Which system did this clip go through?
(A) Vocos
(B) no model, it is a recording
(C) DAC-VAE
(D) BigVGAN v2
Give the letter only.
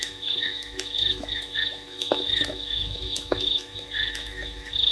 C